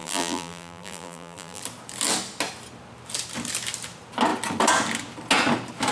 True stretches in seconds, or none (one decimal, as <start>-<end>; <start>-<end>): 1.6-5.9